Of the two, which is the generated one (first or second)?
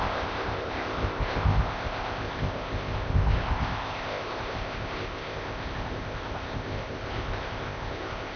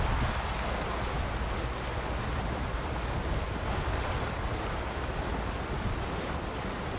first